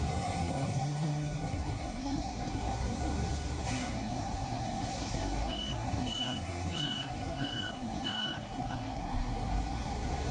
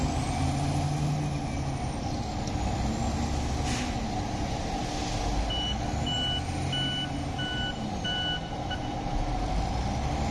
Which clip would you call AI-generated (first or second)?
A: first